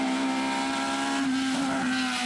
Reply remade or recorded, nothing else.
recorded